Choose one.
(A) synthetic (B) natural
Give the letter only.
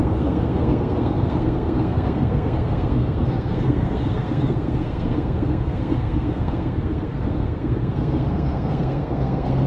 A